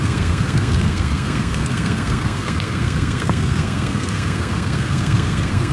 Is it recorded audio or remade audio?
remade